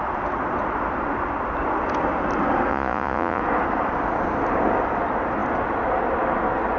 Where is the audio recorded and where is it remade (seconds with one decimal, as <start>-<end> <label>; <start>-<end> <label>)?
0.0-2.7 recorded; 2.7-3.4 remade; 3.4-6.8 recorded

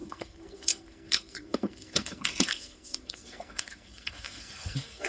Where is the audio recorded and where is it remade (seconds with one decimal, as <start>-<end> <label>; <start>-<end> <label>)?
0.0-5.1 remade

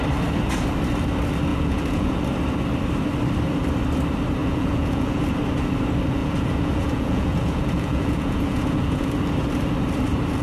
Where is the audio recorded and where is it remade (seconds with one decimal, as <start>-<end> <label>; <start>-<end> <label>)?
0.0-1.5 recorded; 1.5-2.2 remade; 2.2-4.4 recorded; 4.4-5.2 remade; 5.2-6.2 recorded; 6.2-9.1 remade; 9.1-10.4 recorded

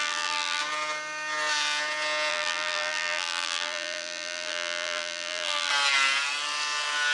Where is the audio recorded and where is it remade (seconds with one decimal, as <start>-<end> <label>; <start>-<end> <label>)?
0.0-0.6 remade; 0.6-2.3 recorded; 2.3-5.7 remade; 5.7-7.1 recorded

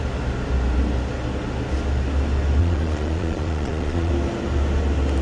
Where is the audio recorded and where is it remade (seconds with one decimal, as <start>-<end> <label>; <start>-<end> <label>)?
0.0-2.6 recorded; 2.6-4.1 remade; 4.1-5.2 recorded

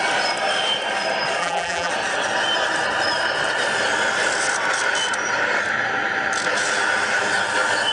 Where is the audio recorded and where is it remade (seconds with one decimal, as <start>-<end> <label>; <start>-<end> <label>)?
0.0-1.4 recorded; 1.4-1.9 remade; 1.9-7.9 recorded

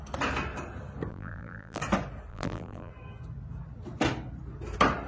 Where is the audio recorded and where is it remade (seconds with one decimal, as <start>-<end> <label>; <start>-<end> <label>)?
0.0-1.1 recorded; 1.1-1.8 remade; 1.8-2.3 recorded; 2.3-2.9 remade; 2.9-5.1 recorded

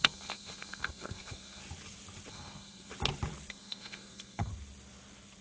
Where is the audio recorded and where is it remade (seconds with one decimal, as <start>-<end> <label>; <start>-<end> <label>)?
0.0-1.6 remade; 1.6-2.3 recorded; 2.3-2.9 remade; 2.9-3.5 recorded; 3.5-4.5 remade; 4.5-5.4 recorded